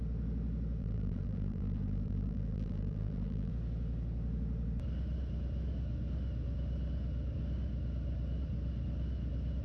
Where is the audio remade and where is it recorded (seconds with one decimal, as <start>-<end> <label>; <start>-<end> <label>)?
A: 0.0-0.8 recorded; 0.8-3.5 remade; 3.5-9.6 recorded